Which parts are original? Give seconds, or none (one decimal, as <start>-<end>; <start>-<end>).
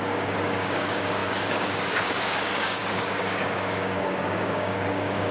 none